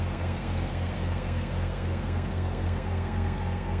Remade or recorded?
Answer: remade